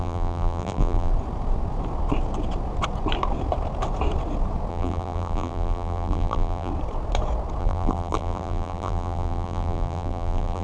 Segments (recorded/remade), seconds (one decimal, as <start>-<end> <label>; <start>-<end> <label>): 0.0-1.1 remade; 1.1-4.7 recorded; 4.7-6.7 remade; 6.7-7.6 recorded; 7.6-10.6 remade